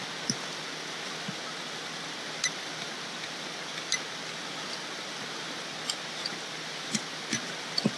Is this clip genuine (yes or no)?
yes